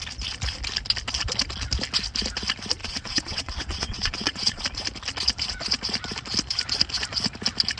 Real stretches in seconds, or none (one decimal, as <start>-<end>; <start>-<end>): 0.0-2.8; 4.6-7.8

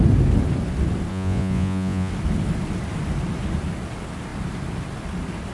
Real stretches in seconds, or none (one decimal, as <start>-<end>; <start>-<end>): 0.0-1.1; 2.1-5.5

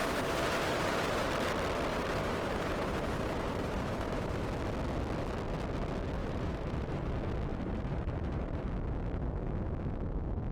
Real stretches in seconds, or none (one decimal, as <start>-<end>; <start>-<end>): 1.3-1.9; 4.5-6.2; 7.1-7.5; 8.7-10.5